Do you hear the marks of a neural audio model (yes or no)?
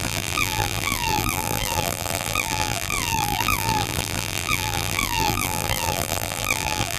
yes